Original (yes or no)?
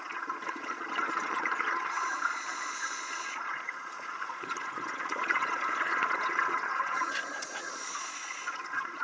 no